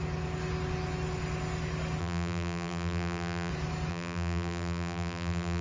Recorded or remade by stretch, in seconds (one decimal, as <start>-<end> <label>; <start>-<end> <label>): 0.0-2.0 recorded; 2.0-3.5 remade; 3.5-3.9 recorded; 3.9-5.6 remade